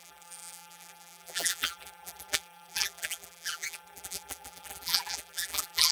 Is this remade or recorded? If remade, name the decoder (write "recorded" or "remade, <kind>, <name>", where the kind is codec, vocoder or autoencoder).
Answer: remade, vocoder, BigVGAN v2